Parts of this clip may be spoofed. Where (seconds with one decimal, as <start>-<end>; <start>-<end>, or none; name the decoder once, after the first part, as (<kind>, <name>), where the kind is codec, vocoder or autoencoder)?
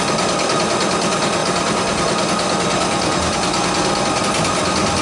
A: none